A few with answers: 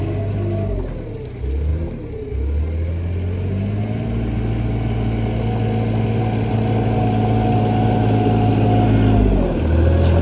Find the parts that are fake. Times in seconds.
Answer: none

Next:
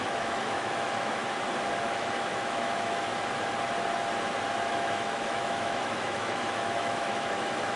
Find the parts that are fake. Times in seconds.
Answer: 0.0-1.2 (autoencoder, DAC-VAE); 1.8-3.1; 4.7-7.8

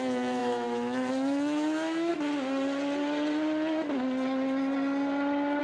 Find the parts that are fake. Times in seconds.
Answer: 0.0-2.1 (autoencoder, DAC-VAE)

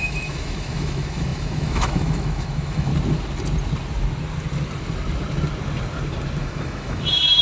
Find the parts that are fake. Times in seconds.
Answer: 0.0-2.9 (autoencoder, DAC-VAE); 6.4-7.4